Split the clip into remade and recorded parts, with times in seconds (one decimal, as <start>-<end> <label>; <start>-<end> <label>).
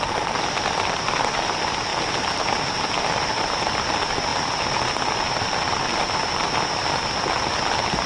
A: 0.0-1.9 recorded; 1.9-2.5 remade; 2.5-8.1 recorded